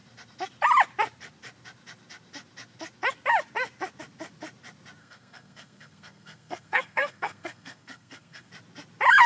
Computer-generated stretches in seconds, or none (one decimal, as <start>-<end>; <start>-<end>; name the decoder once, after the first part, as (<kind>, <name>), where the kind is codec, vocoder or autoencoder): 5.0-8.5 (codec, SNAC)